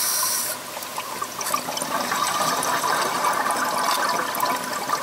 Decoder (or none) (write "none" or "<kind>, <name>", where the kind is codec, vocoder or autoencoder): none